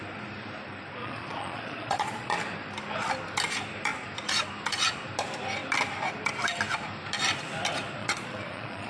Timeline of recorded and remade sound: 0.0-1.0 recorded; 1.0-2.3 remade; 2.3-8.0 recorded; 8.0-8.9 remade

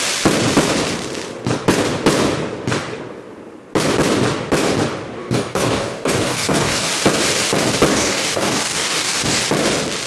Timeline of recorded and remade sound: 0.0-5.2 recorded; 5.2-6.9 remade; 6.9-7.9 recorded; 7.9-9.4 remade; 9.4-10.1 recorded

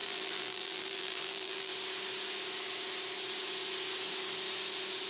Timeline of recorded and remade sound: 0.0-1.7 remade; 1.7-5.1 recorded

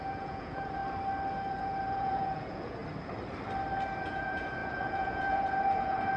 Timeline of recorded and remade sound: 0.0-0.8 remade; 0.8-1.5 recorded; 1.5-2.8 remade; 2.8-4.0 recorded; 4.0-6.2 remade

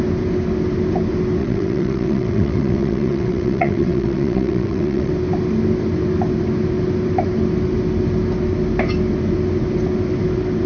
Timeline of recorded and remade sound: 0.0-1.4 recorded; 1.4-5.1 remade; 5.1-10.7 recorded

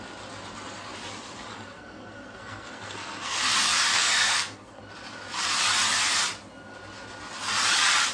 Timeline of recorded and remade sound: 0.0-1.5 recorded; 1.5-3.4 remade; 3.4-3.9 recorded; 3.9-4.8 remade; 4.8-8.1 recorded

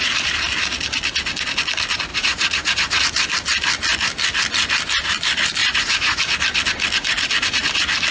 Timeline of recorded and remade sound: 0.0-2.1 recorded; 2.1-3.0 remade; 3.0-5.6 recorded; 5.6-6.2 remade; 6.2-8.1 recorded